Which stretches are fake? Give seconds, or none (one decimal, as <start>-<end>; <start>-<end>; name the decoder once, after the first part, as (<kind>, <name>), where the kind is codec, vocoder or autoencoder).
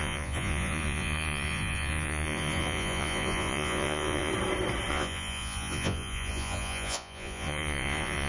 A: 0.0-4.3 (vocoder, Vocos); 4.9-8.3